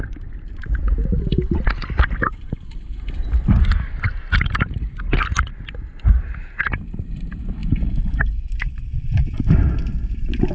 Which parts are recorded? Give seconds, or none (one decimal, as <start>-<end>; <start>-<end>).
0.0-10.5